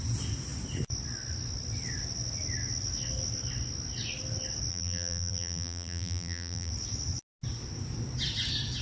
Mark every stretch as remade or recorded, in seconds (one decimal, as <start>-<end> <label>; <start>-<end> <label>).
0.0-4.7 recorded; 4.7-6.7 remade; 6.7-8.8 recorded